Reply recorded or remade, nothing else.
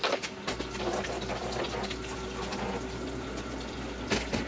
recorded